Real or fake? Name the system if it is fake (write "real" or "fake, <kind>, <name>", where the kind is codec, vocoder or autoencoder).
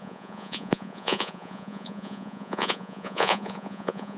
fake, vocoder, Vocos